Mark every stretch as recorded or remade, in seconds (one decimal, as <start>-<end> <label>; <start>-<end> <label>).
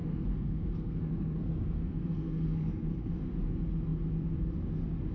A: 0.0-3.1 remade; 3.1-5.1 recorded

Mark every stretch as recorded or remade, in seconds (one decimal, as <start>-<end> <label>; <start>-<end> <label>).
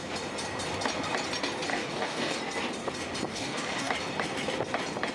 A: 0.0-1.7 recorded; 1.7-2.4 remade; 2.4-3.3 recorded; 3.3-3.9 remade; 3.9-5.1 recorded